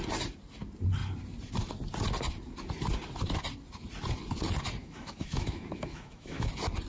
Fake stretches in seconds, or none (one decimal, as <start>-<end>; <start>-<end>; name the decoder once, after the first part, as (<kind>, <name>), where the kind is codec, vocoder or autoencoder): 4.8-6.5 (autoencoder, DAC-VAE)